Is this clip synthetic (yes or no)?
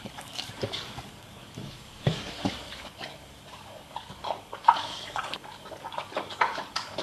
yes